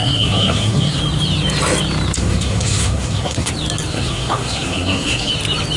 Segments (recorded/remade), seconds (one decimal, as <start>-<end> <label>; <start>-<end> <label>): 0.0-1.0 remade; 1.0-2.2 recorded; 2.2-3.5 remade; 3.5-3.9 recorded; 3.9-5.3 remade; 5.3-5.8 recorded